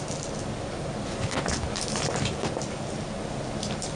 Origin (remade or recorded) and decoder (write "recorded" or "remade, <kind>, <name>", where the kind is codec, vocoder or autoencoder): recorded